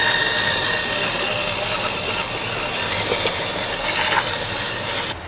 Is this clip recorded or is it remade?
recorded